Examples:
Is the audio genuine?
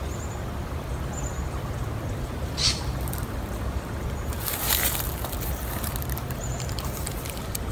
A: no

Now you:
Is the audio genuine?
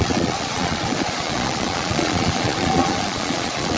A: no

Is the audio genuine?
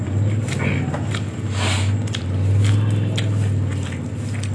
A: yes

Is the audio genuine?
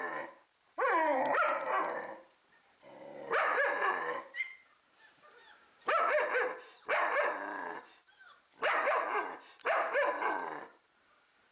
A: no